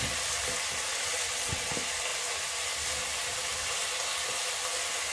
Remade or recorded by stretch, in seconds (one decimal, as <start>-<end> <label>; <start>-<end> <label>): 0.0-0.9 recorded; 0.9-1.7 remade; 1.7-5.1 recorded